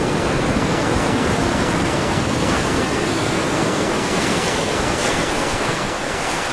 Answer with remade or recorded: remade